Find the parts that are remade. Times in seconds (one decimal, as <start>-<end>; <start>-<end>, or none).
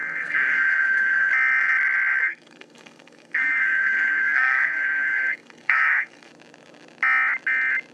0.0-1.3; 2.2-6.3